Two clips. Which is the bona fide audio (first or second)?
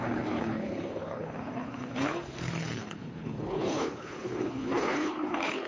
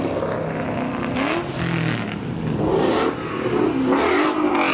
second